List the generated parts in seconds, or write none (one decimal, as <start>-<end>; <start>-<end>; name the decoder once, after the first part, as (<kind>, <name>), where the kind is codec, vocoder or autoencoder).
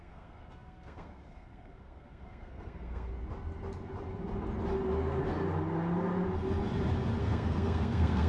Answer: 0.0-3.1 (codec, SNAC); 7.2-8.3